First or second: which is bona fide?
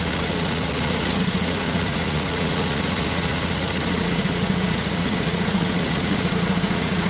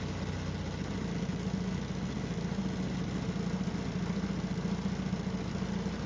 second